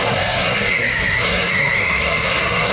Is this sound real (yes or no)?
no